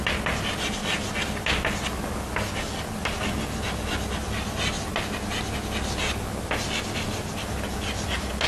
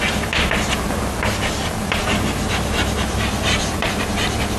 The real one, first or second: first